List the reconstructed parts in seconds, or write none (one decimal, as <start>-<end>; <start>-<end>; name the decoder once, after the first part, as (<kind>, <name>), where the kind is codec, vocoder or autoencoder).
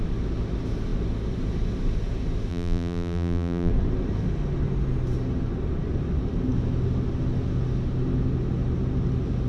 2.5-3.7 (vocoder, BigVGAN v2)